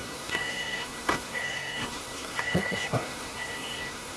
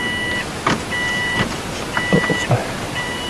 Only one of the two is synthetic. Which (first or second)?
first